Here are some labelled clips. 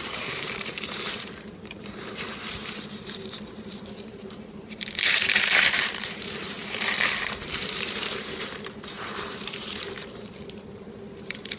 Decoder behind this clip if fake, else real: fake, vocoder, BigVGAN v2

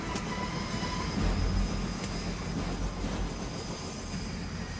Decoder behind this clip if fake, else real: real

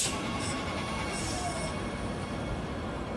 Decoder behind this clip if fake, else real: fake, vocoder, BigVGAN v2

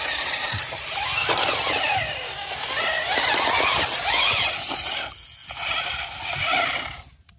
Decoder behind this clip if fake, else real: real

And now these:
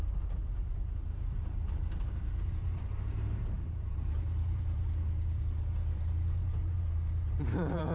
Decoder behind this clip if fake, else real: fake, vocoder, BigVGAN v2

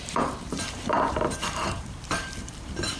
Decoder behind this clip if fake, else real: fake, vocoder, BigVGAN v2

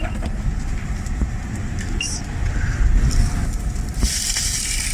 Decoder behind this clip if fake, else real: fake, vocoder, BigVGAN v2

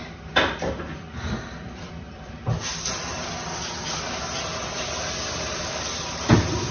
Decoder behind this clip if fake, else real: fake, vocoder, BigVGAN v2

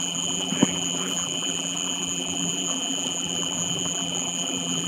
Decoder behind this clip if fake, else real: fake, vocoder, BigVGAN v2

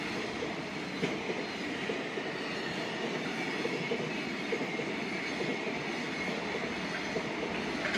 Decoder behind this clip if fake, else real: real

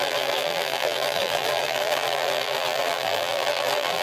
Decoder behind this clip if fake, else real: fake, vocoder, BigVGAN v2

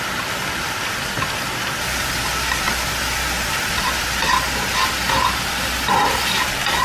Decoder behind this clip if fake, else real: fake, vocoder, BigVGAN v2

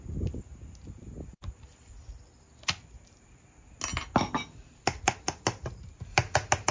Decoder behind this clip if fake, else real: real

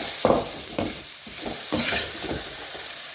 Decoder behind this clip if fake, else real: fake, vocoder, BigVGAN v2